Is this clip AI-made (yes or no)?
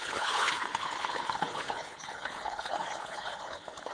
yes